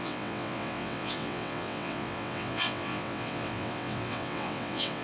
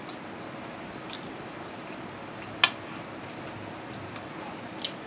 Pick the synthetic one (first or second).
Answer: first